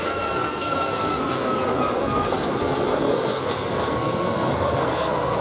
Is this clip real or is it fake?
fake